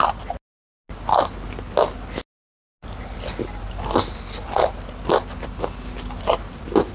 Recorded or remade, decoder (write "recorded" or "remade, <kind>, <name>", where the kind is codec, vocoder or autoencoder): recorded